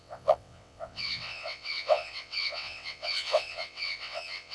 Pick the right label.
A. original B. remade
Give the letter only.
B